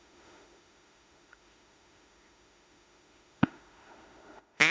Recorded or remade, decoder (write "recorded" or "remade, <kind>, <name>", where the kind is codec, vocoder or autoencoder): remade, autoencoder, DAC-VAE